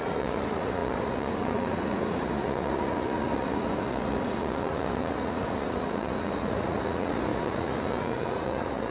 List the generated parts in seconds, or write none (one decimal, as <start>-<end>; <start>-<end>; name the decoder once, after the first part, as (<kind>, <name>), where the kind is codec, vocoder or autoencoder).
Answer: 0.0-8.9 (vocoder, Vocos)